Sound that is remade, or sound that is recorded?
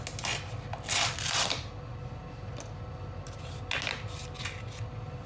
recorded